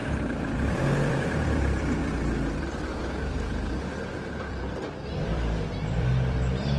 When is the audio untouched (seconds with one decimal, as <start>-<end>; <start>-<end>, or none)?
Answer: none

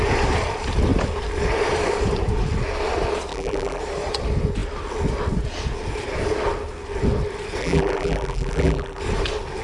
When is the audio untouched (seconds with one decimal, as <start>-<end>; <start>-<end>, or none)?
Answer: 0.0-3.3; 3.8-7.6; 9.0-9.6

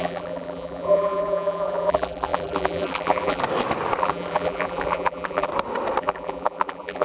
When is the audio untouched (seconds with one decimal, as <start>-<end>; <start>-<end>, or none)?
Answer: 3.4-4.0; 5.5-6.0

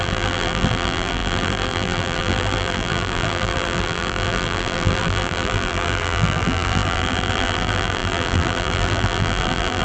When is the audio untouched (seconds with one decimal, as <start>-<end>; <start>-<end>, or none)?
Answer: none

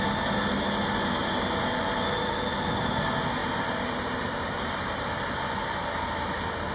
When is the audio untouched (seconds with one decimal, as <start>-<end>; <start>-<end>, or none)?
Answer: 0.0-1.2; 1.8-3.4; 5.5-6.7

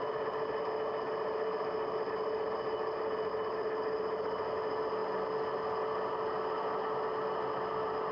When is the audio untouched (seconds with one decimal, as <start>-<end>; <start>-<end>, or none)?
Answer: 0.0-8.1

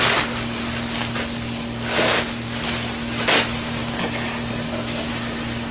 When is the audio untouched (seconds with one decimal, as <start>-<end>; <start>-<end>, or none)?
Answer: 0.0-5.7